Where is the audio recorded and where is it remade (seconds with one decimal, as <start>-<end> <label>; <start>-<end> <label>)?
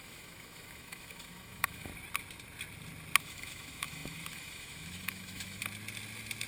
0.0-1.9 remade; 1.9-3.2 recorded; 3.2-5.6 remade; 5.6-6.5 recorded